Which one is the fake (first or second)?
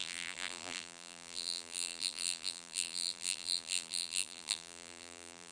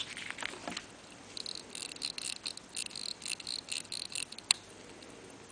first